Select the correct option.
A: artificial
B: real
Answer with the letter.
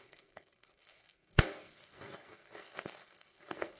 A